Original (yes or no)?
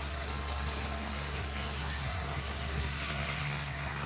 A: no